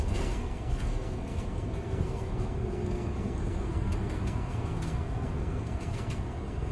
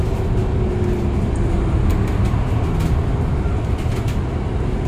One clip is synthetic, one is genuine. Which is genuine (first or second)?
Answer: second